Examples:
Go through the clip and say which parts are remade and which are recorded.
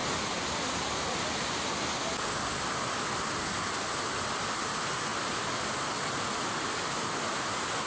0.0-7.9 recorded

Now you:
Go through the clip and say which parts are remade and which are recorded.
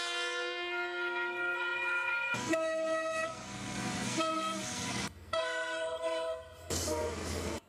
0.0-7.7 remade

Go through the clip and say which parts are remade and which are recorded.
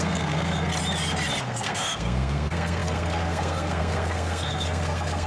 0.0-0.7 remade; 0.7-1.4 recorded; 1.4-5.3 remade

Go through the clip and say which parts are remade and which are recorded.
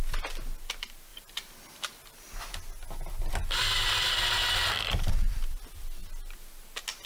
0.0-7.1 recorded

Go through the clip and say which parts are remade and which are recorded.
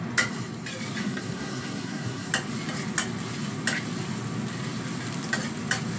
0.0-1.0 recorded; 1.0-2.3 remade; 2.3-6.0 recorded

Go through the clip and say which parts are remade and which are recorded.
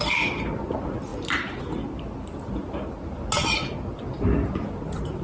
0.0-5.2 recorded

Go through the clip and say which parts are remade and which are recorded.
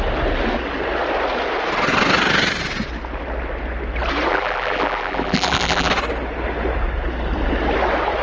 0.0-4.3 recorded; 4.3-5.9 remade; 5.9-8.2 recorded